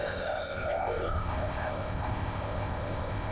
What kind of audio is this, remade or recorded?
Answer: remade